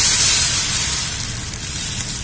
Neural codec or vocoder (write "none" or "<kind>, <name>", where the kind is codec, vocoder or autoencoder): none